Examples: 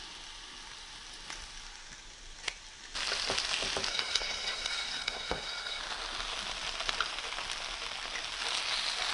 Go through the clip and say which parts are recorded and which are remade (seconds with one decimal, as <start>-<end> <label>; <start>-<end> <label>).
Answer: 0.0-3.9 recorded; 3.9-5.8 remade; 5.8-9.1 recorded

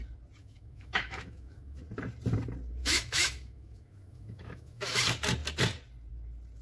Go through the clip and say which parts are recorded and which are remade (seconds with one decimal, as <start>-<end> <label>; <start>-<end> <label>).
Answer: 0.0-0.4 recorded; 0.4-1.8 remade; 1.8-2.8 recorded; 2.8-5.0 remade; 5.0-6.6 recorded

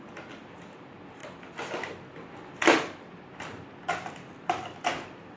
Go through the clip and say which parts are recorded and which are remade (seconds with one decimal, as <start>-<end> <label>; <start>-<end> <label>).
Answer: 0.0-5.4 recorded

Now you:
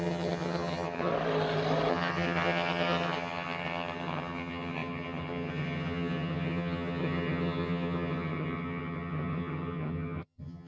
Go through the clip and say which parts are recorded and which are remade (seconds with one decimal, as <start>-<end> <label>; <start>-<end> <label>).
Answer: 0.0-1.1 remade; 1.1-1.9 recorded; 1.9-10.7 remade

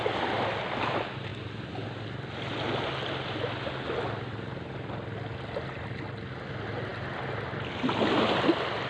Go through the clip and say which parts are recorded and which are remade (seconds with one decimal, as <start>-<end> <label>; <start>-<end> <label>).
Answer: 0.0-8.9 recorded

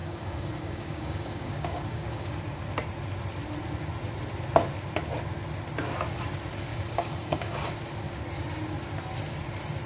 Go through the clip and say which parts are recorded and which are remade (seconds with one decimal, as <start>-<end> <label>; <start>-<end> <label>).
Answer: 0.0-2.4 remade; 2.4-6.7 recorded; 6.7-7.7 remade; 7.7-9.9 recorded

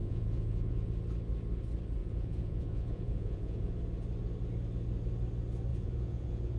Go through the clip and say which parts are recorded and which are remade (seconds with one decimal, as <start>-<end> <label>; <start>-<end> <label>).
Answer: 0.0-0.9 remade; 0.9-2.0 recorded; 2.0-3.8 remade; 3.8-5.7 recorded; 5.7-6.6 remade